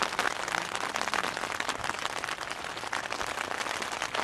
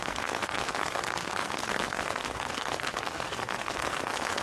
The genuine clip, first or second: first